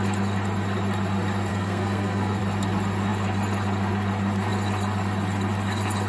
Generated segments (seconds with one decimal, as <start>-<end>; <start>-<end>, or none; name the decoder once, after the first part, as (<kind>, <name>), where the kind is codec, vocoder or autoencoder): 1.5-2.4 (codec, SNAC)